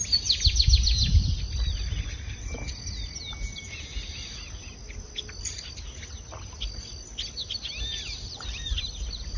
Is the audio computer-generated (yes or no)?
no